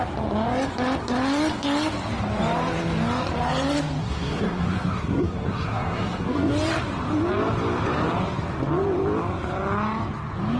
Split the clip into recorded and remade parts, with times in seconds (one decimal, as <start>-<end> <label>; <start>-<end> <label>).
0.0-4.0 recorded; 4.0-6.5 remade; 6.5-10.6 recorded